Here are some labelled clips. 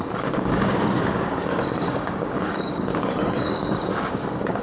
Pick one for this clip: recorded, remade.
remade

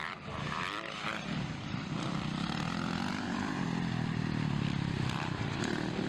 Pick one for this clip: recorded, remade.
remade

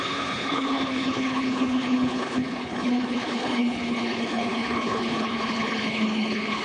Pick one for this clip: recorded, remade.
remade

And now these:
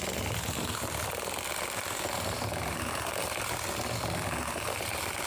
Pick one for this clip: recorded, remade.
recorded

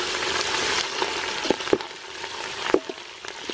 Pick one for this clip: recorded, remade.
recorded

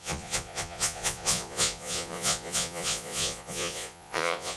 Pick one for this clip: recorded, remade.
remade